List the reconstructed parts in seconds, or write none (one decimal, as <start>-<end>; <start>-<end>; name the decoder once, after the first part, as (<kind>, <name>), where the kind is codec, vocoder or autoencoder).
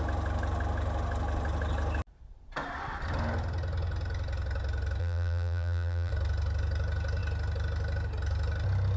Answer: 5.0-6.1 (vocoder, BigVGAN v2)